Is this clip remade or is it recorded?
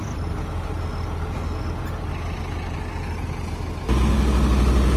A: recorded